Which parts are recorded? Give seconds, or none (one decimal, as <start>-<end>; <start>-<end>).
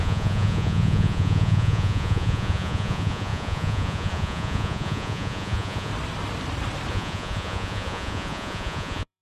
5.9-6.9